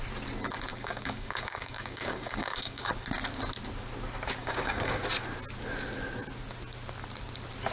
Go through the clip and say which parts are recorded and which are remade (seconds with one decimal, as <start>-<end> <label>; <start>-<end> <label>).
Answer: 0.0-0.7 recorded; 0.7-2.9 remade; 2.9-4.4 recorded; 4.4-5.0 remade; 5.0-7.7 recorded

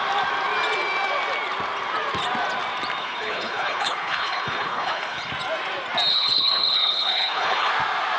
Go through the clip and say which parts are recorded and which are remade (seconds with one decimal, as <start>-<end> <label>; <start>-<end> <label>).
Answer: 0.0-3.0 recorded; 3.0-5.3 remade; 5.3-6.1 recorded; 6.1-7.7 remade; 7.7-8.2 recorded